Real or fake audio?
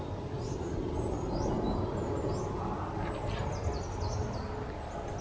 real